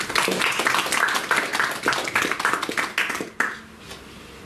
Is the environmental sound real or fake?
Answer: real